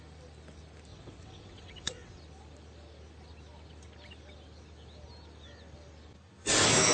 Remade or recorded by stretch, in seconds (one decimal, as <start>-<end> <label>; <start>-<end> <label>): 0.0-0.9 recorded; 0.9-2.2 remade; 2.2-6.9 recorded